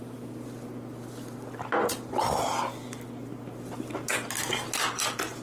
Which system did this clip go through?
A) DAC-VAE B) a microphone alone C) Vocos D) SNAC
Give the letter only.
B